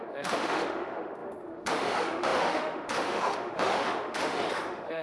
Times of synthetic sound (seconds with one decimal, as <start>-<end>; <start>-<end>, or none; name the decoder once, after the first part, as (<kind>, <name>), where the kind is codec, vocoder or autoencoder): 0.0-5.0 (autoencoder, DAC-VAE)